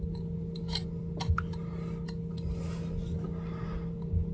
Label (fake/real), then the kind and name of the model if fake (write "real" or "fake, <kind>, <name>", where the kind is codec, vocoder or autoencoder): real